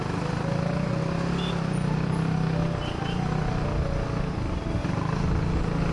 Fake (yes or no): no